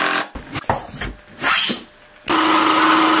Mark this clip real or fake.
real